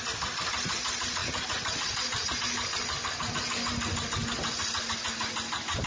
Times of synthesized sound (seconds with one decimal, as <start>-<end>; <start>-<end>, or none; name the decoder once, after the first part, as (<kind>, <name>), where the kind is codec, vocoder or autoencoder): none